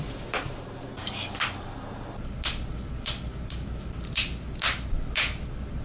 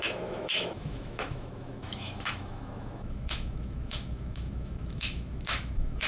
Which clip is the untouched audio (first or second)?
first